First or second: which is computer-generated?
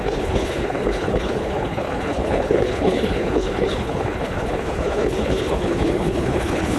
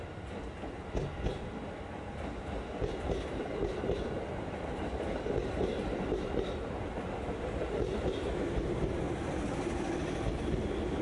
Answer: first